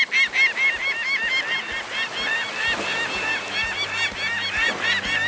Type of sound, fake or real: real